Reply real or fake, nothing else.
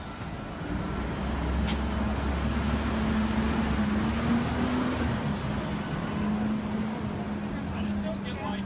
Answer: real